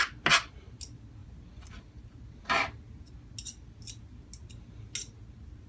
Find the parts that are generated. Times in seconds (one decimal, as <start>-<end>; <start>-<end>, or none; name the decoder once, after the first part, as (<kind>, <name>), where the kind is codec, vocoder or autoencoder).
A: none

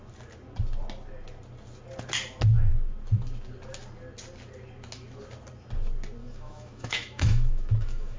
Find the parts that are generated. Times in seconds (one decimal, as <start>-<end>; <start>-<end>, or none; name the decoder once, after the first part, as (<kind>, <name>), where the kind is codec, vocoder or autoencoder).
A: 6.2-8.2 (autoencoder, DAC-VAE)

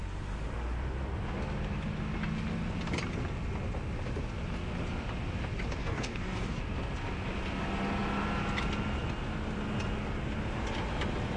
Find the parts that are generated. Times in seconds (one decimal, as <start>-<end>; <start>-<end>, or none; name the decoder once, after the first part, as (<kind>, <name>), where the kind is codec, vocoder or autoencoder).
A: 5.8-6.6 (codec, DAC)

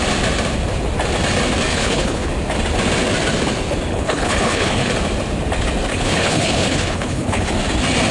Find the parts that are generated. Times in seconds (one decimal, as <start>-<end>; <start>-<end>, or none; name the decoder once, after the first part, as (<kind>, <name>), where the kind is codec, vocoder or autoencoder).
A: 1.7-2.3 (codec, HILCodec); 3.9-4.9; 5.9-7.5

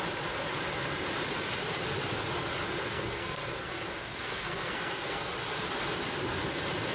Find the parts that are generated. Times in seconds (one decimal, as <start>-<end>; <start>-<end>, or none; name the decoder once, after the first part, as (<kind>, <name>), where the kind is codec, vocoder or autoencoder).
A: 2.8-5.3 (codec, SNAC)